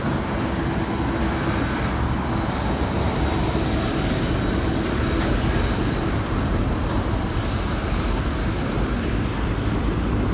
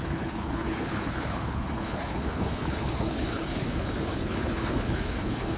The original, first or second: first